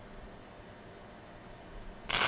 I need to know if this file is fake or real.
real